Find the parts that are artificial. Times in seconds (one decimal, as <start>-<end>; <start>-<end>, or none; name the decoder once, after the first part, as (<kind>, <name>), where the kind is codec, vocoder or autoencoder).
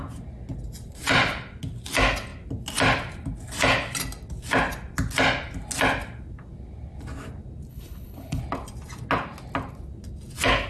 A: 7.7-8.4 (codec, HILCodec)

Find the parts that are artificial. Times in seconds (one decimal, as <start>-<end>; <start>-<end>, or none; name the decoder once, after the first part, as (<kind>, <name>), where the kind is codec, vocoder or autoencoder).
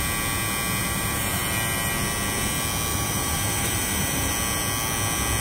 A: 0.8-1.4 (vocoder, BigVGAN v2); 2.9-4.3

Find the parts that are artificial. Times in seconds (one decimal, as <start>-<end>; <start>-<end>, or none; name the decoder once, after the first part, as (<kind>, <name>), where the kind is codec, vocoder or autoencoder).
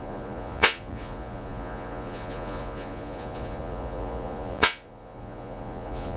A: 0.0-6.2 (vocoder, Vocos)